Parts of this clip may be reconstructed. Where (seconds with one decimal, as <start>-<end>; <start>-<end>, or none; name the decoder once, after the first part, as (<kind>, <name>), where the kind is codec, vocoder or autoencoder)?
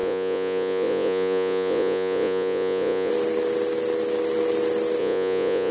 0.0-3.1 (vocoder, Vocos); 5.0-5.7